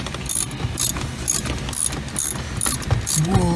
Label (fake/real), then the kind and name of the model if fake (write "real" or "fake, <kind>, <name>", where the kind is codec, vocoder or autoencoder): real